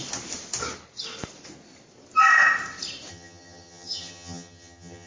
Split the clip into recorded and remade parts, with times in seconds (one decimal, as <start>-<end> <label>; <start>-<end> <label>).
0.0-3.1 recorded; 3.1-5.1 remade